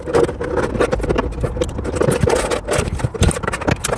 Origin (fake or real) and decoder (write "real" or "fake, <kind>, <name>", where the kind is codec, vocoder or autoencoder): real